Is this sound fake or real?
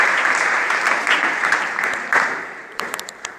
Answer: fake